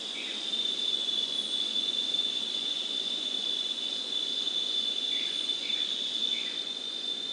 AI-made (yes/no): yes